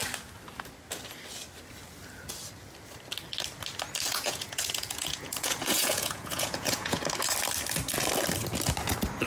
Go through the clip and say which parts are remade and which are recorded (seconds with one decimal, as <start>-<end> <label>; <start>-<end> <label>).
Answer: 0.0-4.1 recorded; 4.1-7.0 remade; 7.0-9.3 recorded